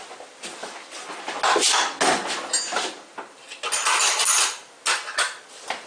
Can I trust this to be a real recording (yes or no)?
yes